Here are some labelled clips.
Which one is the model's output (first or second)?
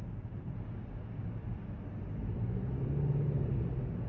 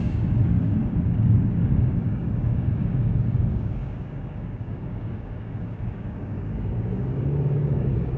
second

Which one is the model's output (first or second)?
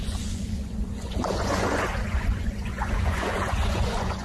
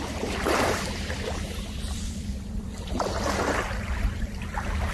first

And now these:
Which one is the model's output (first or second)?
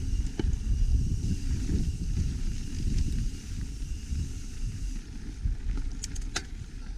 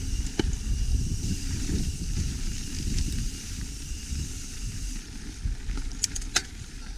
second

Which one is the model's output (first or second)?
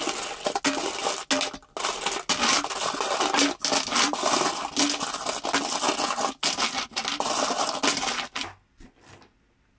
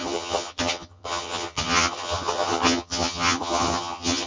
second